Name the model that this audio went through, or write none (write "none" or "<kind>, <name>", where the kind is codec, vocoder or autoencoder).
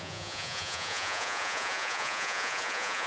vocoder, Vocos